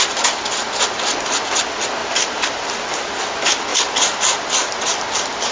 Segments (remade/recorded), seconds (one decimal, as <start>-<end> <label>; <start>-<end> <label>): 0.0-2.0 recorded; 2.0-3.2 remade; 3.2-3.7 recorded; 3.7-4.2 remade; 4.2-5.5 recorded

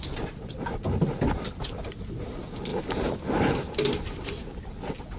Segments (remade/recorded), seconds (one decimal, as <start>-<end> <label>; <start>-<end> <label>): 0.0-2.7 recorded; 2.7-5.2 remade

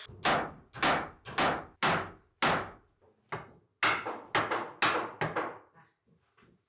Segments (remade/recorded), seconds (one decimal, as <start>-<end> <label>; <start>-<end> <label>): 0.0-6.7 recorded